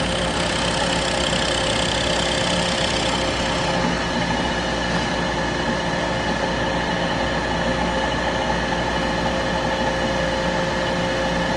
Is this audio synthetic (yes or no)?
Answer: no